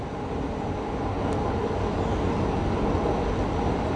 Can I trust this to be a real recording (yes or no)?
yes